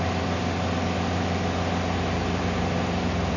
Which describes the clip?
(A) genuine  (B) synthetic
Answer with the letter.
A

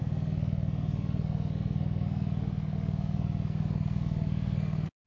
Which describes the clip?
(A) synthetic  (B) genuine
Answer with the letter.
A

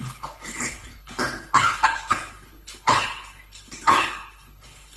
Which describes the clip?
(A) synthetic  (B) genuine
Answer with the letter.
A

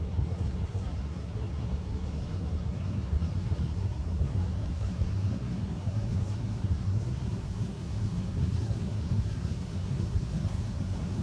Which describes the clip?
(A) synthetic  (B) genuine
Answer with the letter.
A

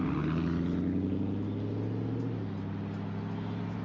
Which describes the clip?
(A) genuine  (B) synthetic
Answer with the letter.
A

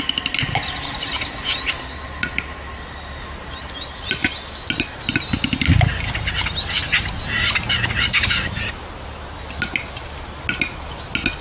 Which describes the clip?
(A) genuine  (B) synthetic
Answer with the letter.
A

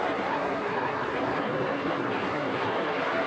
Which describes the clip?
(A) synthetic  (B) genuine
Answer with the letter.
A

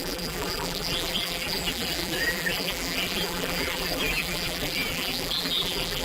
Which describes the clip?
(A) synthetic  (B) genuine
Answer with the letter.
A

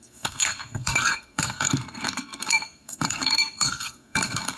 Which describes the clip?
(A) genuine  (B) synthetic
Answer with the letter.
B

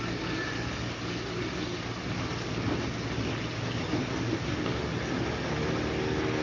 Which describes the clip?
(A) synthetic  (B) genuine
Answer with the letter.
B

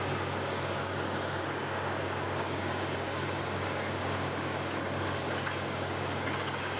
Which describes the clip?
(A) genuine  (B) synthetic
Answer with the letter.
B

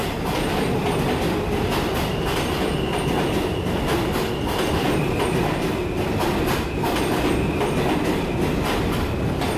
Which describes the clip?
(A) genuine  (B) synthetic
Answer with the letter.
A